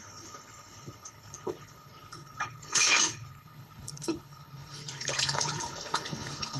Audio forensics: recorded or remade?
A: remade